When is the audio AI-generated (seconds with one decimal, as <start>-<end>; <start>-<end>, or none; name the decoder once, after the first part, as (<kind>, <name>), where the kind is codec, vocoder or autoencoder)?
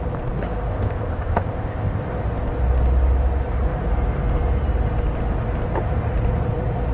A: 0.7-2.0 (codec, ZipCodec)